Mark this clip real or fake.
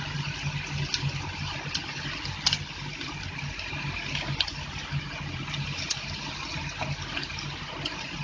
real